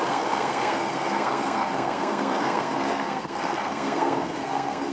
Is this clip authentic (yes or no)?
no